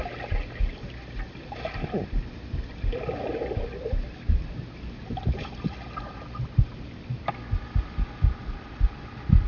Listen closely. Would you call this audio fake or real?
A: real